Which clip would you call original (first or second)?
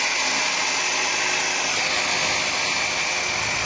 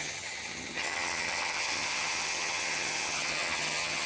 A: first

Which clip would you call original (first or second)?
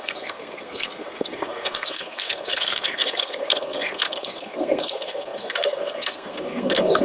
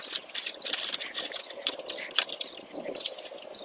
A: second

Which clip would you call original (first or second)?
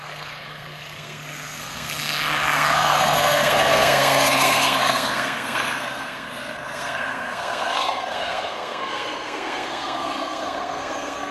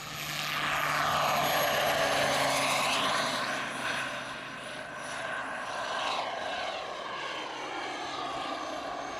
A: second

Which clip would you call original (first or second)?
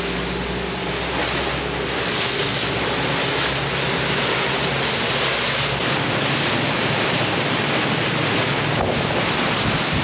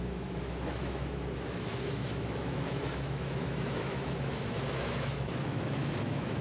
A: first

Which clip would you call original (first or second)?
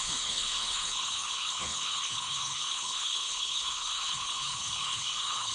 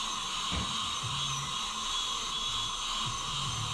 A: second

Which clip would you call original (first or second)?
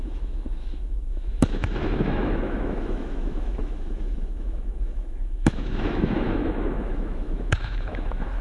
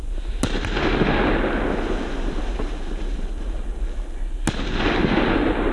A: second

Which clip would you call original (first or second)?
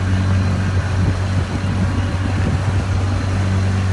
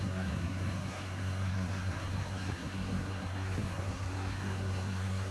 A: first